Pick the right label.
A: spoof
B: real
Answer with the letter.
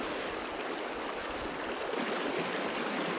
B